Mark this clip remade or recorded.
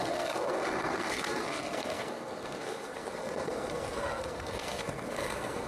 remade